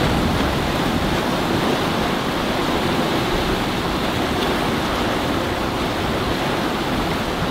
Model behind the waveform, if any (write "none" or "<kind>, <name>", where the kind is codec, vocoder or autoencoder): none